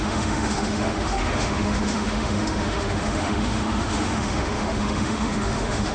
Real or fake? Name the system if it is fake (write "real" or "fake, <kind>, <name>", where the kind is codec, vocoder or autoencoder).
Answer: fake, autoencoder, DAC-VAE